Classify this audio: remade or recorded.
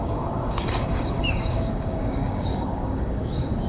remade